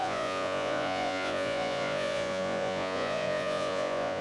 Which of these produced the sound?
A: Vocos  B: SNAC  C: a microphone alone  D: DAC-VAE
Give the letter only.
A